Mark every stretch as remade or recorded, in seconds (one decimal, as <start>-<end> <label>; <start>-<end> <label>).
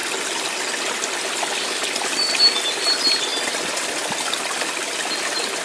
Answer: 0.0-5.6 recorded